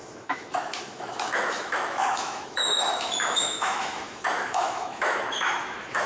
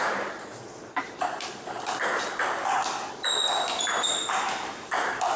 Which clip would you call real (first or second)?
second